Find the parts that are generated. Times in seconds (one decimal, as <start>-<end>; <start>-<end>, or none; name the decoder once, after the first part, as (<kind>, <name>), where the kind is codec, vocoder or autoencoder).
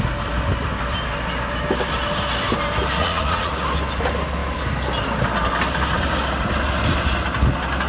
3.0-3.5 (vocoder, Vocos)